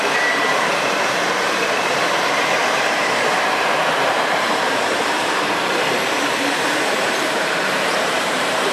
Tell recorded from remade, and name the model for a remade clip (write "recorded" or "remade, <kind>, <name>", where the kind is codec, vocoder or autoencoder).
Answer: remade, vocoder, BigVGAN v2